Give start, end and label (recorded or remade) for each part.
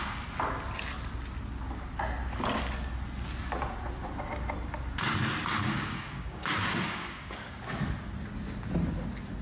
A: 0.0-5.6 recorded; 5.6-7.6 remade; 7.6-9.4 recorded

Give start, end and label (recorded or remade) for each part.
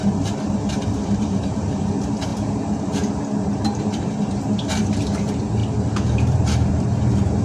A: 0.0-7.4 remade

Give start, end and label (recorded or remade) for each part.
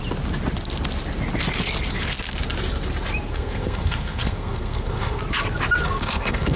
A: 0.0-3.3 recorded; 3.3-5.2 remade; 5.2-5.8 recorded; 5.8-6.6 remade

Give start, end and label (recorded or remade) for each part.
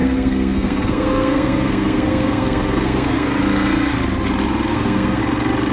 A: 0.0-3.4 remade; 3.4-4.7 recorded; 4.7-5.2 remade; 5.2-5.7 recorded